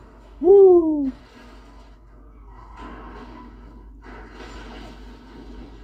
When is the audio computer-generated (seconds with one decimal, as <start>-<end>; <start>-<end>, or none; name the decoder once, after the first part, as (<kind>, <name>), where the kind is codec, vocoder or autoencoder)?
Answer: 0.0-1.2 (codec, SNAC)